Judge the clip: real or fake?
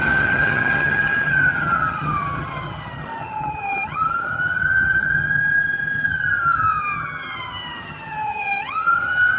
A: fake